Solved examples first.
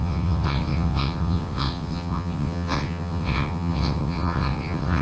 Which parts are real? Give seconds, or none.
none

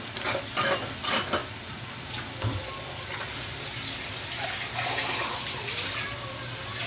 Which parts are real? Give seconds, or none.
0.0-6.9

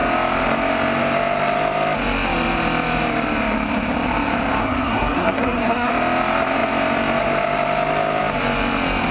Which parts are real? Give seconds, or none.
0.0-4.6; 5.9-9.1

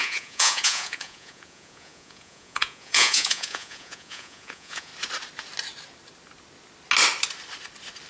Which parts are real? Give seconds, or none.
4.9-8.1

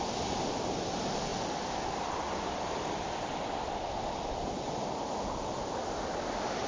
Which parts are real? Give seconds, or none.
0.0-6.7

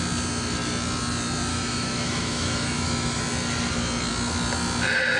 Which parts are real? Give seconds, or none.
0.0-1.5; 3.2-5.2

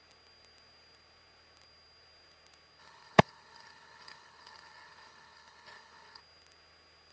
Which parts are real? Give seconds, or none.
0.0-2.8; 6.2-7.1